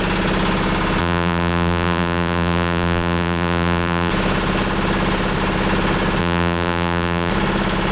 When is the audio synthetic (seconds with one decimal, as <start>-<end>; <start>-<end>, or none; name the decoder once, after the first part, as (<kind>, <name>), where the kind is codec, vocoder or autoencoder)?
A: 1.0-4.1 (vocoder, BigVGAN v2); 6.2-7.3